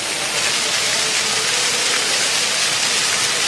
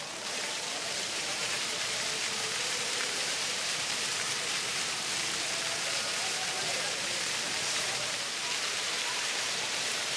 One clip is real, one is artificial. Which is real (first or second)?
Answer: first